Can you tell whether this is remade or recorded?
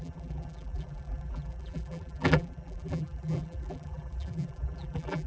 remade